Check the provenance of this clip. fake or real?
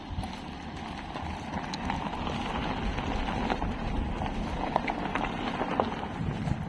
real